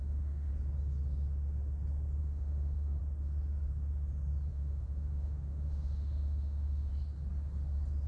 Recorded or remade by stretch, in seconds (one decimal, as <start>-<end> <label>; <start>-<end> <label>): 0.0-0.5 remade; 0.5-2.2 recorded; 2.2-3.0 remade; 3.0-4.5 recorded; 4.5-6.9 remade; 6.9-8.1 recorded